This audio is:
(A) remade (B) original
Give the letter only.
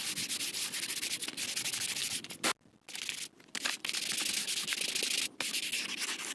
B